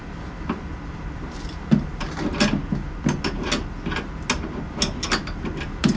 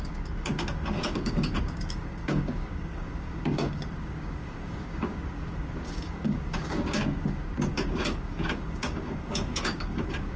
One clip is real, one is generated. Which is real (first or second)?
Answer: first